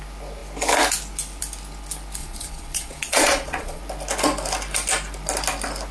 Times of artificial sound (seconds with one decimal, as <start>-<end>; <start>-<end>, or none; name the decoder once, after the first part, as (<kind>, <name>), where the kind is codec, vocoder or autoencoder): 2.2-3.8 (vocoder, Vocos)